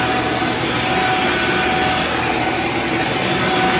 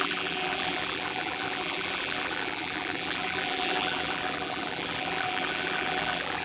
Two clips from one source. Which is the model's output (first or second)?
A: second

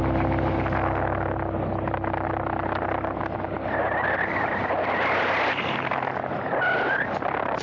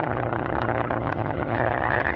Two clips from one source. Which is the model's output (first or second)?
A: second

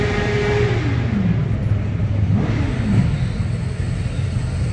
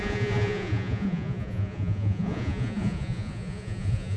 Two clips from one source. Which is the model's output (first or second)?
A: second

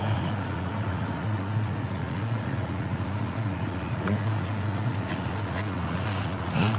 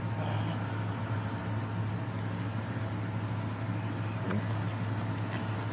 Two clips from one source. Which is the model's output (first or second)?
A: first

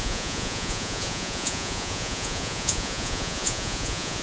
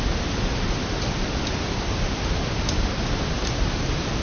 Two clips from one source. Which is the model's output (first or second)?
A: first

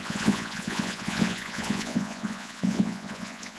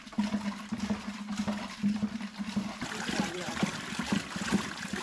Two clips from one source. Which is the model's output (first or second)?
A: first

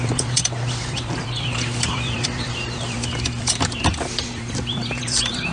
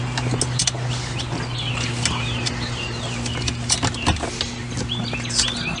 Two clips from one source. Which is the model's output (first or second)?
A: first